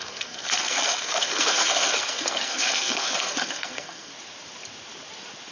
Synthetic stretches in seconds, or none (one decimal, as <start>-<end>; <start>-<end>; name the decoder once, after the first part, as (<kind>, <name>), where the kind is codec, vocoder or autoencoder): 0.0-4.1 (codec, SNAC)